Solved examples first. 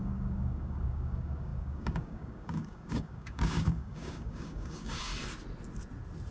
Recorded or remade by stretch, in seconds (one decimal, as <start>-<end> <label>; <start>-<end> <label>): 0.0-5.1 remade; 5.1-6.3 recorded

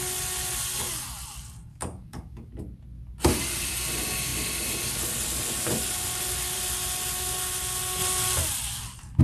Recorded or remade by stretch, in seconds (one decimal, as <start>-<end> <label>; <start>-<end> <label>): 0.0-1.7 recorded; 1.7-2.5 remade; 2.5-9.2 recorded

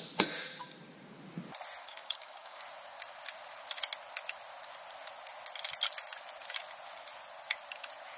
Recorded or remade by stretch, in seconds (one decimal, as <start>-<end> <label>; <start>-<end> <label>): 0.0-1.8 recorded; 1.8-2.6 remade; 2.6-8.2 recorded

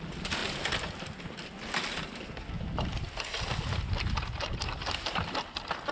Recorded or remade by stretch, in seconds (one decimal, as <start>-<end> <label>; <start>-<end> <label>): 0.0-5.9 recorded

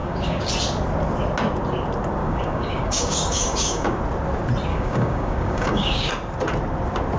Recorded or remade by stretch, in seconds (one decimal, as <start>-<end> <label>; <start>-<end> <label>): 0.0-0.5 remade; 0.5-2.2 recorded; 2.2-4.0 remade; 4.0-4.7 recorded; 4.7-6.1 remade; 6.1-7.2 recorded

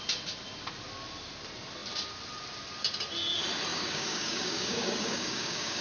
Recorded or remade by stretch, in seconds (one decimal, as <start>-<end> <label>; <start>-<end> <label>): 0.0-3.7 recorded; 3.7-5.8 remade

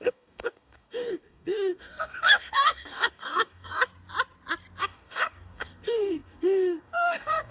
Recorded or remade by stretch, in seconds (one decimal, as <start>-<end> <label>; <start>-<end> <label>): 0.0-3.9 remade; 3.9-4.8 recorded; 4.8-7.5 remade

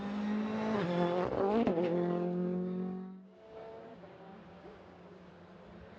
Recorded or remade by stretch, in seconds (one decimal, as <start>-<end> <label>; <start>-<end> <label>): 0.0-1.7 recorded; 1.7-5.3 remade; 5.3-6.0 recorded